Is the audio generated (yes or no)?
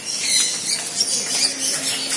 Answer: no